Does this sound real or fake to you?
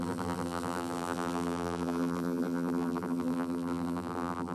fake